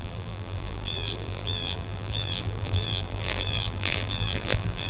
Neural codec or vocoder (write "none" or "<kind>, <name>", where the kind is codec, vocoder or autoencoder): vocoder, BigVGAN v2